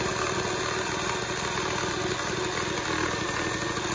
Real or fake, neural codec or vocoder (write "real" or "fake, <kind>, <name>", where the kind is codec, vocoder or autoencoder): real